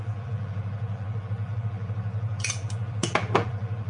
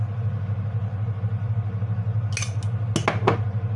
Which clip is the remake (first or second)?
first